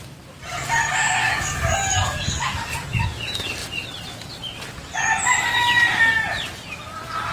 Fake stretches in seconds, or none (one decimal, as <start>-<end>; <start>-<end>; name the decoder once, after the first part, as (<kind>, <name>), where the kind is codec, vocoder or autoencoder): 0.9-2.7 (codec, DAC)

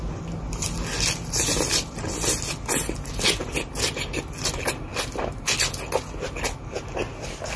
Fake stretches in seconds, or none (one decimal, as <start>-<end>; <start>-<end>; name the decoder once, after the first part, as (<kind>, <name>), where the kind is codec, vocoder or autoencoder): none

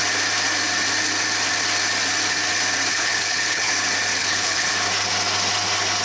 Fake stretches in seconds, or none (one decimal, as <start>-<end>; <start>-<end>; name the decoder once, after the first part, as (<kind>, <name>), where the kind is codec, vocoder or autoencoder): 2.9-3.7 (codec, HILCodec); 4.2-4.7

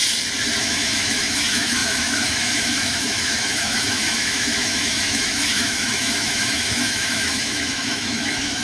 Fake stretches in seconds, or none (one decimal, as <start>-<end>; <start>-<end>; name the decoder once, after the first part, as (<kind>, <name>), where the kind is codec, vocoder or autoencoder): 0.6-8.6 (autoencoder, DAC-VAE)

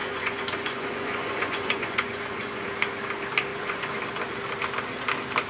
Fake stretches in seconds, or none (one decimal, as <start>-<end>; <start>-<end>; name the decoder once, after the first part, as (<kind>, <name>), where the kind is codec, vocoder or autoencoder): 0.0-2.6 (vocoder, Vocos); 3.5-4.0

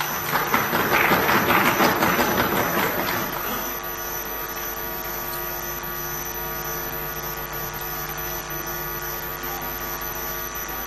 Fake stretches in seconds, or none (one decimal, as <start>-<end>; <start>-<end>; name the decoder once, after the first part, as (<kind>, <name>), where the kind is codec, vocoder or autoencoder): none